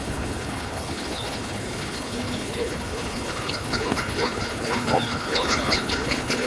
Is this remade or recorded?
remade